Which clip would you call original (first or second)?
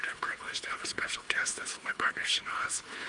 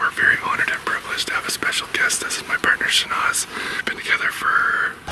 second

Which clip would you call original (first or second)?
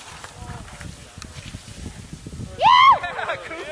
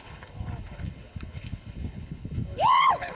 first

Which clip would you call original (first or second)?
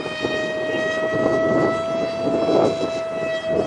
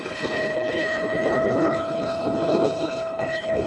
first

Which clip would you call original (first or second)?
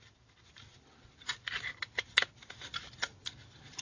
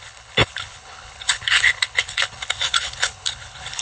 first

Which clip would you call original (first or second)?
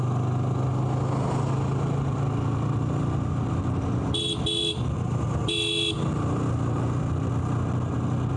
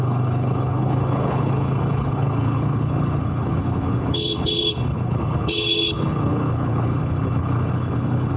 first